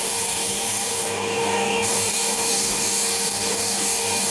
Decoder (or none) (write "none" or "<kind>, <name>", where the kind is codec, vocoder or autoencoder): codec, DAC